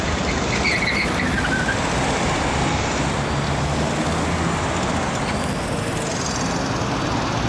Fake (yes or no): no